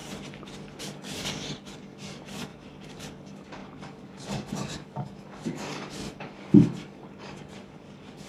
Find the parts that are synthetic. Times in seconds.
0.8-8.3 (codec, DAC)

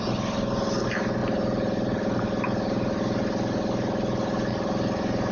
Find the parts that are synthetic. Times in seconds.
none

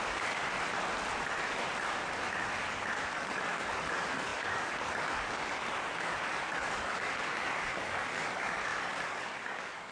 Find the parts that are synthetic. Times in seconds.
0.0-0.4 (codec, DAC); 2.7-9.9